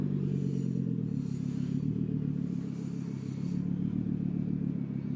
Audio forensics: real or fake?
real